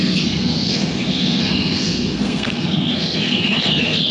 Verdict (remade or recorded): remade